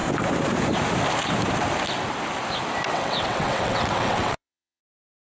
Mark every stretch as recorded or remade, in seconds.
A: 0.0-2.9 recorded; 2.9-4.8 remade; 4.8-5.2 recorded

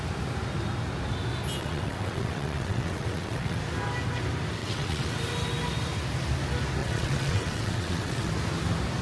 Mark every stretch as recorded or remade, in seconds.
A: 0.0-1.6 recorded; 1.6-3.6 remade; 3.6-4.6 recorded; 4.6-5.2 remade; 5.2-6.8 recorded; 6.8-8.3 remade; 8.3-9.0 recorded

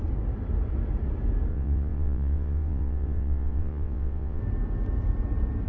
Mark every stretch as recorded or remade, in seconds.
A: 0.0-1.5 recorded; 1.5-4.4 remade; 4.4-5.7 recorded

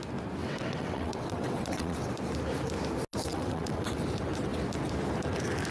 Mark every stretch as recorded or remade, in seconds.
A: 0.0-0.4 recorded; 0.4-2.1 remade; 2.1-3.3 recorded; 3.3-4.0 remade; 4.0-5.7 recorded

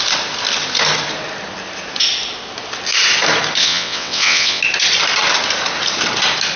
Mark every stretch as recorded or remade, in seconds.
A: 0.0-3.6 recorded; 3.6-4.6 remade; 4.6-6.6 recorded

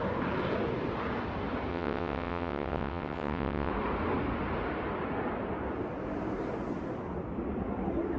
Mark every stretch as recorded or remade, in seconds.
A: 0.0-1.7 recorded; 1.7-3.7 remade; 3.7-8.2 recorded

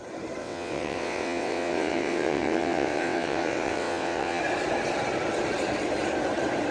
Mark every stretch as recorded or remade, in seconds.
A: 0.0-0.4 recorded; 0.4-4.4 remade; 4.4-6.7 recorded